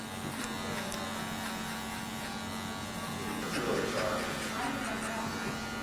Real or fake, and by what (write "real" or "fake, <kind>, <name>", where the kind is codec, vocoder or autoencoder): real